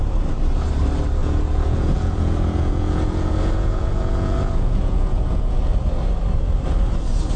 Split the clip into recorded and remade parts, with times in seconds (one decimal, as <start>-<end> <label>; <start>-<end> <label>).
0.0-1.2 recorded; 1.2-5.6 remade; 5.6-7.4 recorded

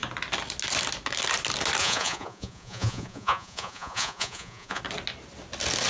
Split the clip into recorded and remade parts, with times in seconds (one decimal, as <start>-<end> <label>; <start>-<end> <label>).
0.0-1.8 recorded; 1.8-4.8 remade; 4.8-5.9 recorded

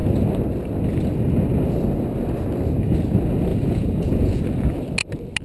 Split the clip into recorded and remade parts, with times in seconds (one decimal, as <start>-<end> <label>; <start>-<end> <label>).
0.0-3.5 recorded; 3.5-4.4 remade; 4.4-5.4 recorded

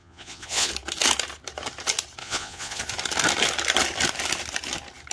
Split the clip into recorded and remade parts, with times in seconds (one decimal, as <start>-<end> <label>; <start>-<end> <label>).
0.0-0.7 remade; 0.7-2.2 recorded; 2.2-2.8 remade; 2.8-5.1 recorded